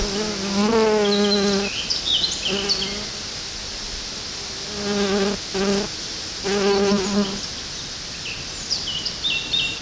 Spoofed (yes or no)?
no